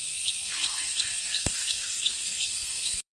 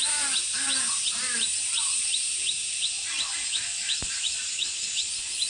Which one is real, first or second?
second